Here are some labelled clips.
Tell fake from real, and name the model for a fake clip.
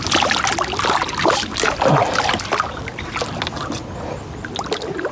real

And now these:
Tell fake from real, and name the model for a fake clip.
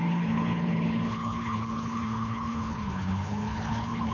fake, codec, HILCodec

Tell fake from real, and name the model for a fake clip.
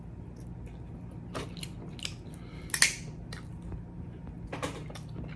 real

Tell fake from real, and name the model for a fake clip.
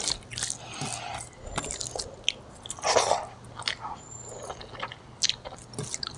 real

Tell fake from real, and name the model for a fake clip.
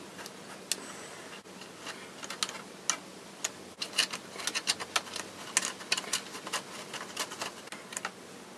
real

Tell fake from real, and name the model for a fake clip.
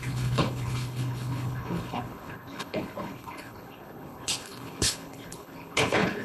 fake, codec, HILCodec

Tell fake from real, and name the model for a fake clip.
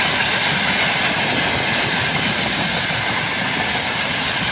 real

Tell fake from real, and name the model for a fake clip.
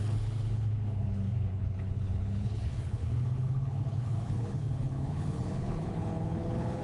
fake, codec, HILCodec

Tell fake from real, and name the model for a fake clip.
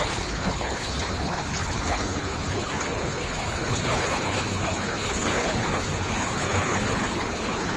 fake, codec, HILCodec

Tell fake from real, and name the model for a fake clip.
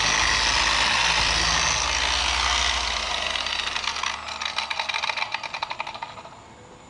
real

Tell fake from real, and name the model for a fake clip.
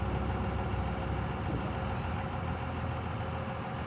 real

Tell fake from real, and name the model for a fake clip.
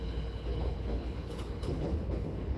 fake, codec, HILCodec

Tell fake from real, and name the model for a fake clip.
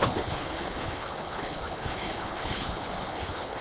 fake, codec, HILCodec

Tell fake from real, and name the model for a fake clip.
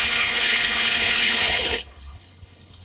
fake, codec, HILCodec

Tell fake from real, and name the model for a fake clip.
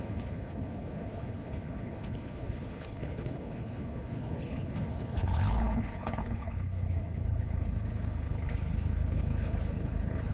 fake, codec, HILCodec